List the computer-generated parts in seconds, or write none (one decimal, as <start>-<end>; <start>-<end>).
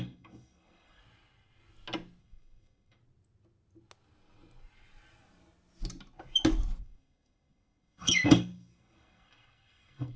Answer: 0.0-1.0; 2.2-3.0; 6.8-10.2